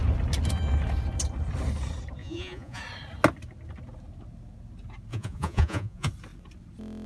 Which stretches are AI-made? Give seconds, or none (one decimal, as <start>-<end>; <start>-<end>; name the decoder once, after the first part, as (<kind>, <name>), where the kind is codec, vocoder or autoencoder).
2.2-2.8 (vocoder, Vocos); 5.1-6.1